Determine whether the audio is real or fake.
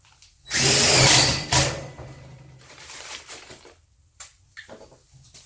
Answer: fake